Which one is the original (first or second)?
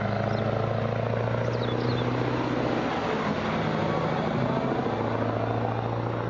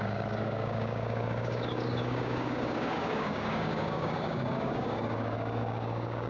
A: first